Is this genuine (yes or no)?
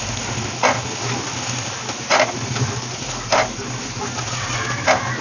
yes